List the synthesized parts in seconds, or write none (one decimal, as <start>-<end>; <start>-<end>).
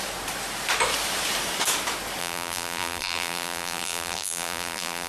2.2-5.1